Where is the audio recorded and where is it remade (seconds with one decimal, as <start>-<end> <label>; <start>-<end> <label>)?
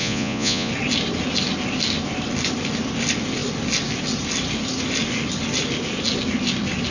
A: 0.0-0.7 remade; 0.7-6.9 recorded